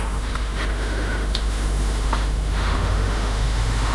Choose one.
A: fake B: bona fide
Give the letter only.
A